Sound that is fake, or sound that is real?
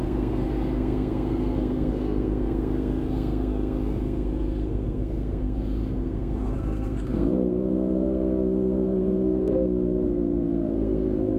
fake